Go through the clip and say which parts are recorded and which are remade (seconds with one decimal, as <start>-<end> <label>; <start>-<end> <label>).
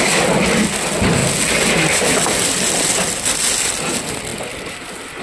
0.0-5.2 recorded